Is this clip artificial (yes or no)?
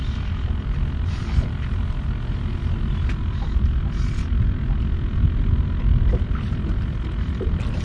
no